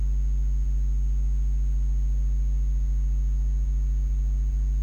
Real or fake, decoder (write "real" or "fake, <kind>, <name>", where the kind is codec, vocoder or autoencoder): real